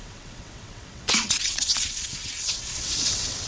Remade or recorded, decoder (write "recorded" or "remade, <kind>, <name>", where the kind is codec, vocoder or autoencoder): remade, vocoder, WaveNeXt